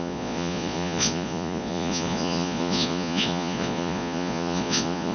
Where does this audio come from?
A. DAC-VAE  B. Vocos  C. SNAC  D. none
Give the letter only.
B